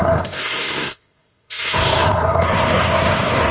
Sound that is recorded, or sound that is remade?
remade